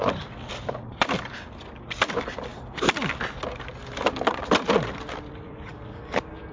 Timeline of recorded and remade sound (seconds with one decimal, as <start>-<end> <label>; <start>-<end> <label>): 0.0-2.5 remade; 2.5-5.2 recorded; 5.2-5.7 remade; 5.7-6.5 recorded